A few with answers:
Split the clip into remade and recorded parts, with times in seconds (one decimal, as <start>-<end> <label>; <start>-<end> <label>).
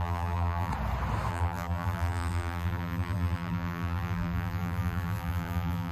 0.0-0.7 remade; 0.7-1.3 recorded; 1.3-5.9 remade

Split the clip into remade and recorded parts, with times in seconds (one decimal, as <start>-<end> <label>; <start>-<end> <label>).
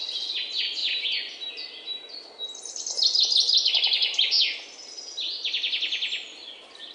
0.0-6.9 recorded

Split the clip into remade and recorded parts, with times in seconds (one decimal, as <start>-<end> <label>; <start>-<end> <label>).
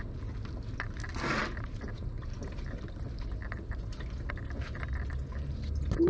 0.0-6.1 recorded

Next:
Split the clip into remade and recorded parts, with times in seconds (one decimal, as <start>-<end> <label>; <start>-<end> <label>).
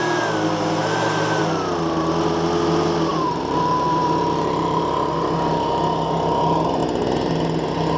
0.0-0.8 recorded; 0.8-1.4 remade; 1.4-3.1 recorded; 3.1-4.8 remade; 4.8-8.0 recorded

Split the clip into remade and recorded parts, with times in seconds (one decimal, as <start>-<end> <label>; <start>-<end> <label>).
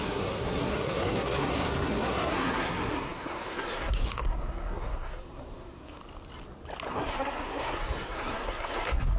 0.0-6.0 remade; 6.0-6.9 recorded; 6.9-9.2 remade